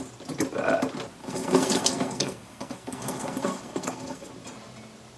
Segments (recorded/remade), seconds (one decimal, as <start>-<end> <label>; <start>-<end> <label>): 0.0-1.2 recorded; 1.2-4.3 remade; 4.3-5.2 recorded